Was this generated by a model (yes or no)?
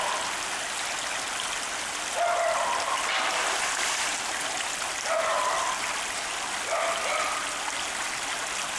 no